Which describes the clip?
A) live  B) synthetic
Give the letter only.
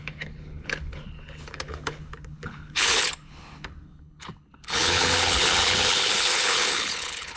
B